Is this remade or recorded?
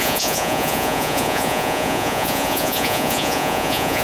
remade